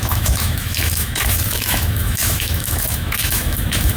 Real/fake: fake